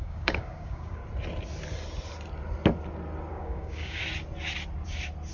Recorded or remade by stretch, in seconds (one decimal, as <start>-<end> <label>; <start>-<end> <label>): 0.0-1.0 remade; 1.0-3.3 recorded; 3.3-4.0 remade; 4.0-5.3 recorded